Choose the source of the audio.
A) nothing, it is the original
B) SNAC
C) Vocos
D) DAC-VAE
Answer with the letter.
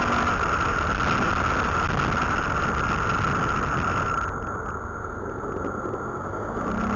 A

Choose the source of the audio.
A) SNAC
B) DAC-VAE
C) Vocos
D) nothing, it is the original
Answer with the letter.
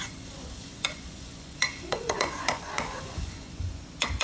C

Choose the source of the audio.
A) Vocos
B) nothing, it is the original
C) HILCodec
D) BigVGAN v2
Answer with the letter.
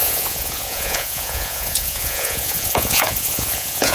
A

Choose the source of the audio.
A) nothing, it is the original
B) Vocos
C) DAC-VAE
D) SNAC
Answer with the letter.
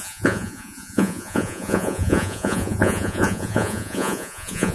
B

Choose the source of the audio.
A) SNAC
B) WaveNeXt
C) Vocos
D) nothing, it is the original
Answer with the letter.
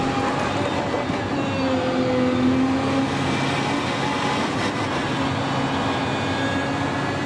D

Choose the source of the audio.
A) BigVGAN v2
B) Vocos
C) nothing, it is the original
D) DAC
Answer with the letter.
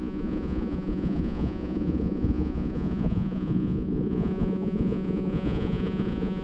B